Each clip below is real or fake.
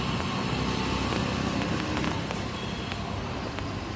real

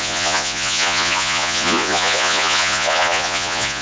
fake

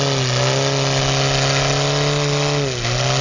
real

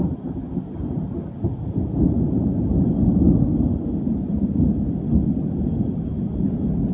real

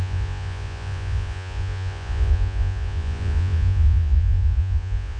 fake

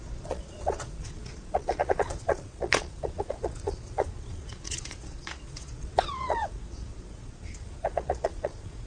fake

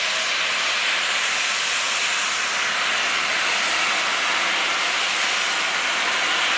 real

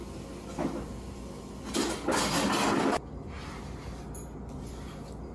real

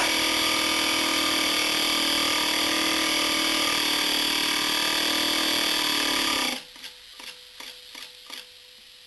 real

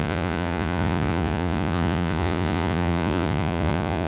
fake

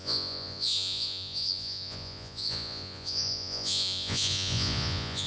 fake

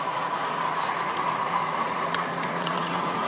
fake